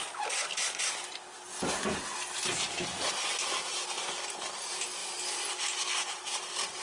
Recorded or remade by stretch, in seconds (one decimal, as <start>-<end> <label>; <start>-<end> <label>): 0.0-6.8 recorded

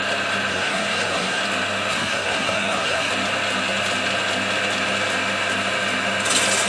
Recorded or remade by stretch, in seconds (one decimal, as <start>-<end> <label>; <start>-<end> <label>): 0.0-0.5 recorded; 0.5-1.4 remade; 1.4-1.9 recorded; 1.9-3.1 remade; 3.1-6.7 recorded

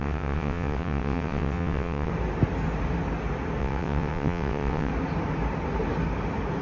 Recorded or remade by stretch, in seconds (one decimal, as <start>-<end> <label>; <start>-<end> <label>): 0.0-2.1 remade; 2.1-3.6 recorded; 3.6-4.9 remade; 4.9-6.6 recorded

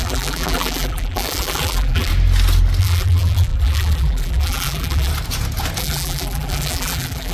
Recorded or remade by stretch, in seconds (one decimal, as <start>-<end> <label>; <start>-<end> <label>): 0.0-2.1 remade; 2.1-2.8 recorded; 2.8-5.1 remade; 5.1-5.8 recorded; 5.8-7.3 remade

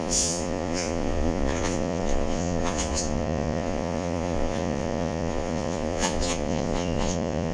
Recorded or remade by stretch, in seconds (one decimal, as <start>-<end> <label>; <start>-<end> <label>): 0.0-7.5 remade

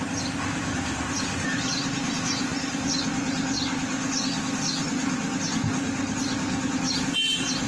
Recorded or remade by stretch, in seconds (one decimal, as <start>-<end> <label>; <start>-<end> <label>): 0.0-7.7 recorded

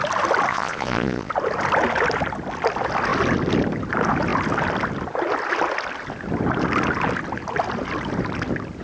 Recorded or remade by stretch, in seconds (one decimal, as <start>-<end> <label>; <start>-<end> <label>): 0.0-0.5 recorded; 0.5-1.3 remade; 1.3-8.8 recorded